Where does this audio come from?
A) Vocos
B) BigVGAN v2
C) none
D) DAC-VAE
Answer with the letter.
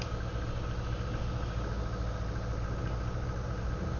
C